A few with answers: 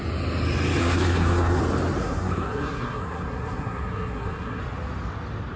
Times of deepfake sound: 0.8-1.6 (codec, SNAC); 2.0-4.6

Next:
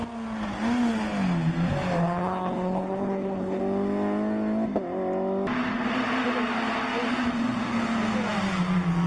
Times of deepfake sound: 2.0-3.6 (codec, HILCodec)